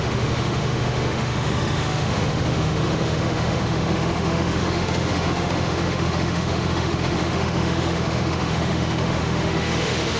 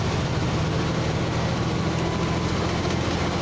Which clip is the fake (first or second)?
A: first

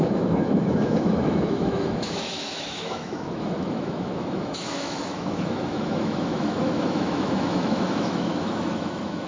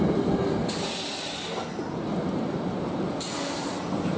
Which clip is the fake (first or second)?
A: first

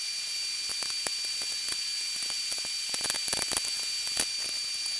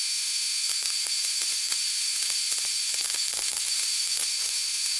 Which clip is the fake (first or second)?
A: second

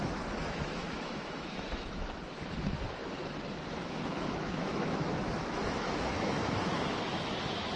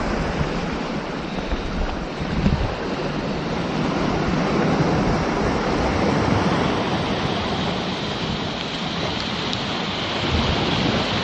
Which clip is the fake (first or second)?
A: first